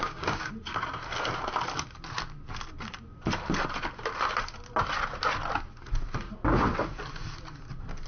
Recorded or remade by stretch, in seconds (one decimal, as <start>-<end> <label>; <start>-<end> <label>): 0.0-0.5 remade; 0.5-8.1 recorded